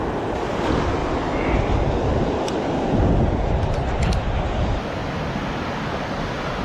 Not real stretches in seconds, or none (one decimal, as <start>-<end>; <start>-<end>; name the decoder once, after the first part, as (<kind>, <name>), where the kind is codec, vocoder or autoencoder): none